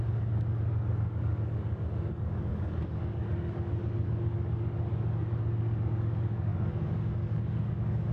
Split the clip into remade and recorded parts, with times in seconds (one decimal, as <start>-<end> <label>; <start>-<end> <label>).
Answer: 0.0-8.1 remade